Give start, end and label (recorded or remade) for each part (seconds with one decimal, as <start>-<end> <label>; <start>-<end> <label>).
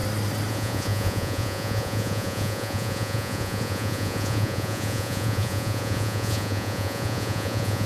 0.0-0.5 recorded; 0.5-7.9 remade